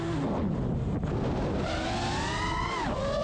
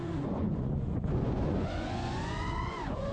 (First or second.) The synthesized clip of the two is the second